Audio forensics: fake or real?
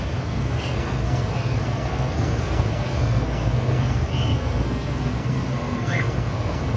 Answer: fake